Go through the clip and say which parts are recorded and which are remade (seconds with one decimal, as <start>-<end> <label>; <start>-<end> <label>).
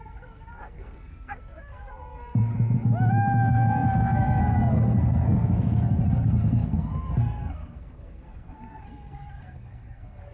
0.0-2.5 remade; 2.5-3.1 recorded; 3.1-10.3 remade